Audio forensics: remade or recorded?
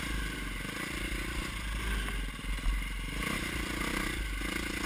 recorded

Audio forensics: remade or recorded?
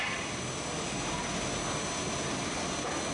recorded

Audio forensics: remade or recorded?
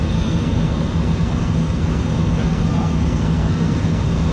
remade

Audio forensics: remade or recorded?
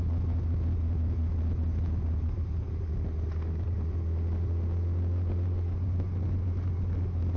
recorded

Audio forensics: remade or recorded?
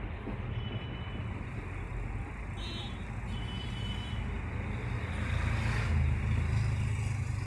recorded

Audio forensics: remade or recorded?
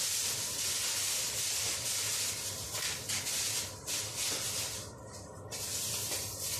recorded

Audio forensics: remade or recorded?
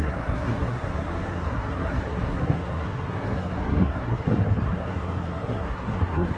remade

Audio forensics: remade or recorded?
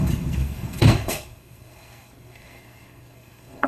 remade